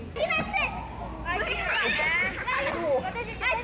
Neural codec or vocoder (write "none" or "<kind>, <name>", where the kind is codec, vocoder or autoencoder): none